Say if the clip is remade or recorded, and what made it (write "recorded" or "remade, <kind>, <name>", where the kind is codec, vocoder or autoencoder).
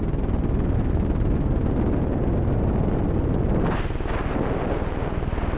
recorded